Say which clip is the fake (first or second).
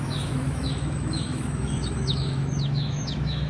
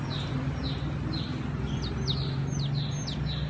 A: first